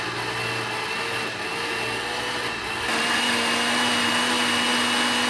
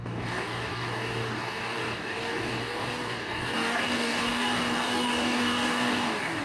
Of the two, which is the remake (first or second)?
second